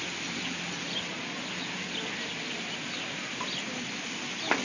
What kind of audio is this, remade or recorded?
recorded